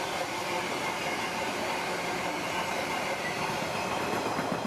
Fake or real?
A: real